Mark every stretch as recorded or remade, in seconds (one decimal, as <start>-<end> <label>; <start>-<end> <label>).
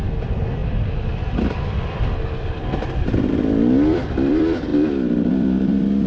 0.0-6.1 remade